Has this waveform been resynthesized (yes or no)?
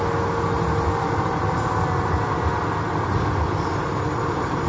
no